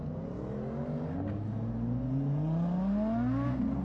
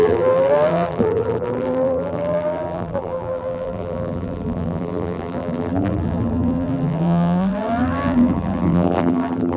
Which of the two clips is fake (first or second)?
second